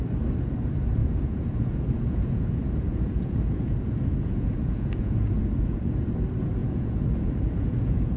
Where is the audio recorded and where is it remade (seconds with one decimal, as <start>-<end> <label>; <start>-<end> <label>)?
0.0-1.0 recorded; 1.0-5.9 remade; 5.9-6.6 recorded; 6.6-8.2 remade